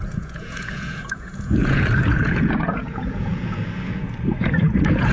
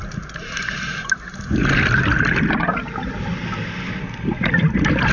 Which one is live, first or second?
second